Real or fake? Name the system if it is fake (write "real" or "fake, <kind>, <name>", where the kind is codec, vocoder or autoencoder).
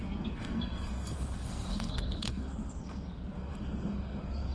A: fake, codec, SNAC